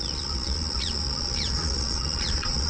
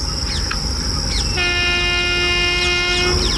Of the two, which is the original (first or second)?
second